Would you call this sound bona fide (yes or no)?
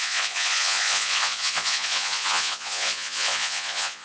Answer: no